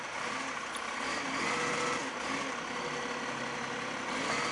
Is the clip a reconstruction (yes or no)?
no